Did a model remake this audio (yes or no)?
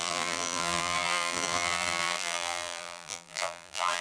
yes